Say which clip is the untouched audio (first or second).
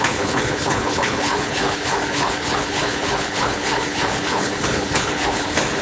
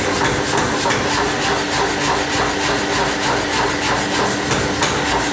second